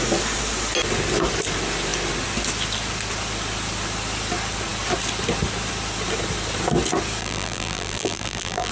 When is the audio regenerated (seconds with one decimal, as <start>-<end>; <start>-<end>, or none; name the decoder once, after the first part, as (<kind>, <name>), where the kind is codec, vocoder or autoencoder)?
7.2-8.7 (vocoder, BigVGAN v2)